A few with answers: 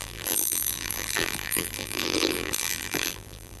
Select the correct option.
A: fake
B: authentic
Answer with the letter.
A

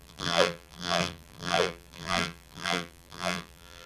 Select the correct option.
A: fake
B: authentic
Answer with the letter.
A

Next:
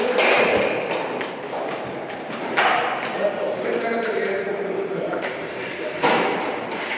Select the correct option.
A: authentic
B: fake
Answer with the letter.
B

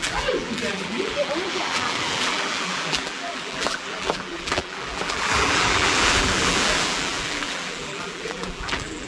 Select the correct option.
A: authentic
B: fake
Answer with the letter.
B